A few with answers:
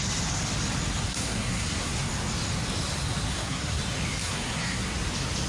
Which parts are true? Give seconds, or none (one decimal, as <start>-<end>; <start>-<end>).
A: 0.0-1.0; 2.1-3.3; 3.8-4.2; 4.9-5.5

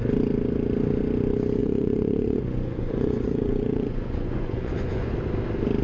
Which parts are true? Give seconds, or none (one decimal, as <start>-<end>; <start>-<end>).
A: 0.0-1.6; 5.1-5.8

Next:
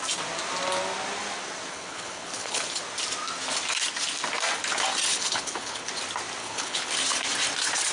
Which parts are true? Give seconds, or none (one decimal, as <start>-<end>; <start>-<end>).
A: 0.0-1.7; 2.8-5.1; 5.9-6.4; 6.9-7.9